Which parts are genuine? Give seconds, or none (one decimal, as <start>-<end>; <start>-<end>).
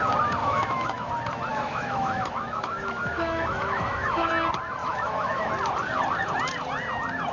0.0-0.4; 1.1-1.5; 4.3-4.8; 5.5-7.3